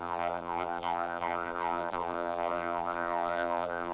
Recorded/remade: remade